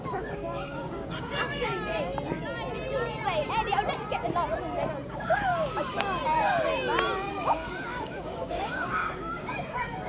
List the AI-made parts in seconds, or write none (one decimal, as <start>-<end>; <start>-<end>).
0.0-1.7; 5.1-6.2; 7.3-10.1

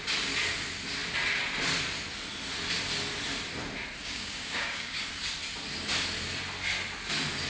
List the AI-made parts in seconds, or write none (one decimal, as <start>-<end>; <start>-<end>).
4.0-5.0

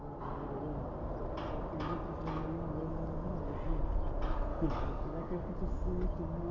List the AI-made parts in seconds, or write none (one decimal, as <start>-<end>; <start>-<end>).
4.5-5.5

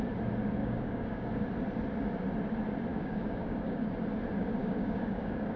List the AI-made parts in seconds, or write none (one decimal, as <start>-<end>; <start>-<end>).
0.6-1.3; 2.9-3.9; 4.6-5.6

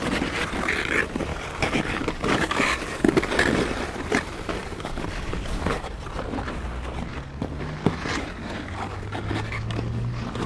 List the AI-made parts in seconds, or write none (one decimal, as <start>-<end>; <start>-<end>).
1.3-3.2; 4.6-6.0; 7.1-10.5